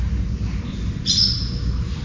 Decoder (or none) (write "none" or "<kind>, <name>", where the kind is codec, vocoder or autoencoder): none